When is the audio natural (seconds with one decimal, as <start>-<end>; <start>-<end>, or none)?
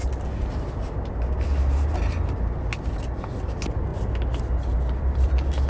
0.0-5.7